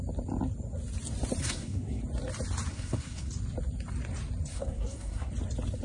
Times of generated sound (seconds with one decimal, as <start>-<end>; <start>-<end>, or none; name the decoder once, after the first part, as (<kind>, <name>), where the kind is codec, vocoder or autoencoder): 1.4-2.0 (codec, SNAC); 2.7-3.3; 4.5-5.3